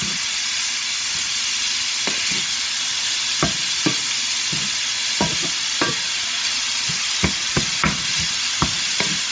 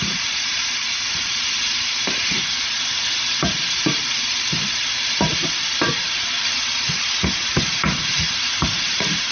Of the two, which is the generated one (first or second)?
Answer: second